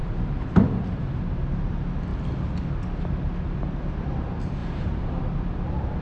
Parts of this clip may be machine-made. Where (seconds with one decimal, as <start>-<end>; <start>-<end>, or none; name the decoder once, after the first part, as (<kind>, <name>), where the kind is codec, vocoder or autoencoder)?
0.0-1.2 (vocoder, BigVGAN v2); 4.6-5.2